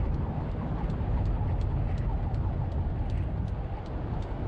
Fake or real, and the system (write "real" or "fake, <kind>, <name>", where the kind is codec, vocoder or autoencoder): real